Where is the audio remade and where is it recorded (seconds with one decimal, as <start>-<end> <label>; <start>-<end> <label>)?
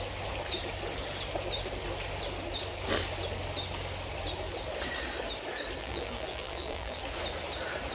0.0-5.8 recorded; 5.8-7.0 remade; 7.0-7.9 recorded